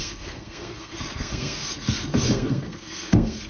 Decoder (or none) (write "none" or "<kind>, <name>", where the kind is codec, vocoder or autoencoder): codec, SNAC